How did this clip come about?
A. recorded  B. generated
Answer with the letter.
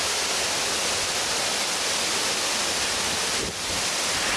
A